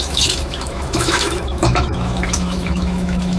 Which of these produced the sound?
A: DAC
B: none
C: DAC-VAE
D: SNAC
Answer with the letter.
C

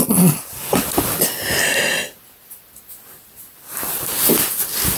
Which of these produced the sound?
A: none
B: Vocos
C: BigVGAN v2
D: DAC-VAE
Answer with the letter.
A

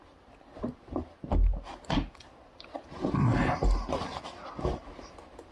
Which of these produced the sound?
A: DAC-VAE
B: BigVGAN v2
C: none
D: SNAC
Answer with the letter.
C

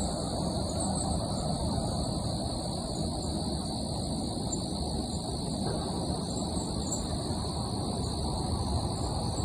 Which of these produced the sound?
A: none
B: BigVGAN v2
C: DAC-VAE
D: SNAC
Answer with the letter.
A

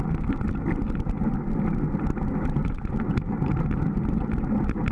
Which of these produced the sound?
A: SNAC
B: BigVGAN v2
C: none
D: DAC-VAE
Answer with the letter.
C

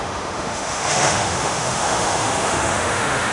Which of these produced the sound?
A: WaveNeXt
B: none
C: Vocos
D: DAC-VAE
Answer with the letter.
D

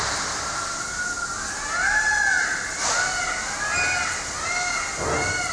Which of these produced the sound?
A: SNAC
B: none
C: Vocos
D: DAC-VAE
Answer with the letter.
B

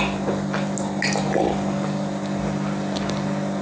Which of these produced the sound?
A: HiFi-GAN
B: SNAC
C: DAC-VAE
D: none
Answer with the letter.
D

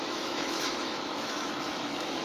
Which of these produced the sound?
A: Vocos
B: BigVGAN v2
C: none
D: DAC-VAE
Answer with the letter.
D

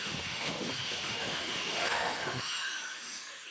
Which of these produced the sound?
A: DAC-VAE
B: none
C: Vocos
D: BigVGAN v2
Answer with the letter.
A